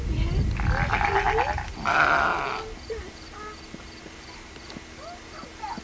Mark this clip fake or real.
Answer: real